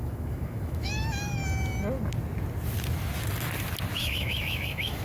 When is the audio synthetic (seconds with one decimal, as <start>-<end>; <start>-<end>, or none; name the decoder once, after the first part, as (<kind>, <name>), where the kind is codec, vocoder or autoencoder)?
0.0-1.4 (autoencoder, DAC-VAE); 4.0-5.0